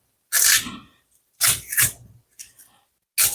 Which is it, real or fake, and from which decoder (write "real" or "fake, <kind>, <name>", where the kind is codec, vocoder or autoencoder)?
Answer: real